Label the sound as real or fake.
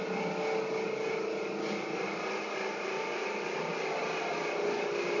real